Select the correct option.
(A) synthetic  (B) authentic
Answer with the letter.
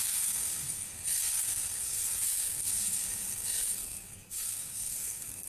A